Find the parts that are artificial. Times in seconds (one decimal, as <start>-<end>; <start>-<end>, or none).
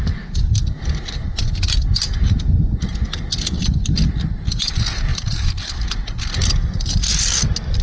5.1-5.7